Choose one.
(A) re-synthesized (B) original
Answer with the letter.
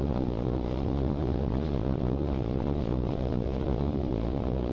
A